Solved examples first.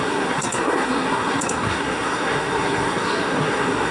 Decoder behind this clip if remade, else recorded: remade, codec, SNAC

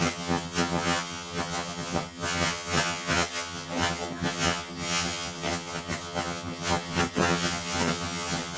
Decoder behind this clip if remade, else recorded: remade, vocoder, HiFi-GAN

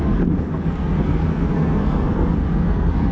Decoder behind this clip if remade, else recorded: remade, codec, SNAC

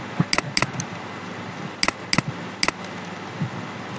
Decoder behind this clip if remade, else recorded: recorded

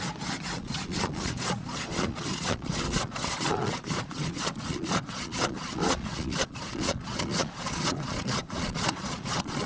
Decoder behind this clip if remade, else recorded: remade, vocoder, Vocos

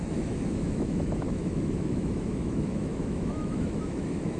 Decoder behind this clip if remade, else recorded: remade, autoencoder, DAC-VAE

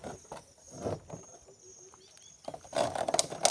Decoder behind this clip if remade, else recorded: recorded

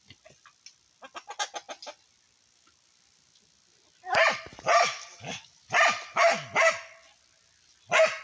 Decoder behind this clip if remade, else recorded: recorded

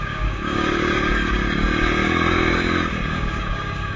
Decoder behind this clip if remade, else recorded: remade, codec, DAC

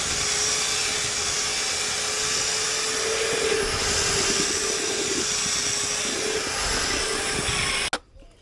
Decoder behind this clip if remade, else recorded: recorded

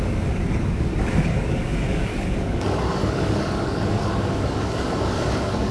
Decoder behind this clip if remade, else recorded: remade, codec, DAC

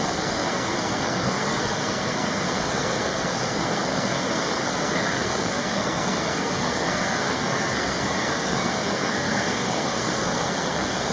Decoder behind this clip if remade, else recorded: remade, codec, SNAC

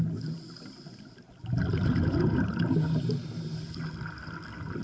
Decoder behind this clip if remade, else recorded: recorded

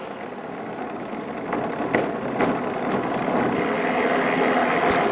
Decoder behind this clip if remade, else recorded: recorded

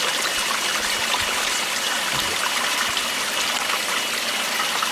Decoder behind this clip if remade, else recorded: recorded